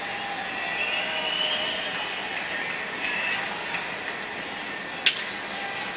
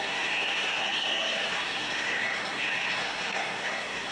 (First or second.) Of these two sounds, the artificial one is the second